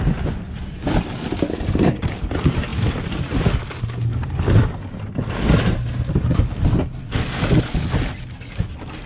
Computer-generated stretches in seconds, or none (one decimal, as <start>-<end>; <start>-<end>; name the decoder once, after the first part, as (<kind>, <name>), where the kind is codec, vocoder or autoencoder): none